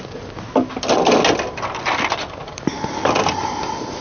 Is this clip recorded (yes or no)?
yes